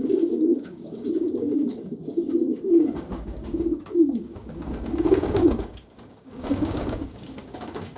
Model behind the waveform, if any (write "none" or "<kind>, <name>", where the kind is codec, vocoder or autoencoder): codec, DAC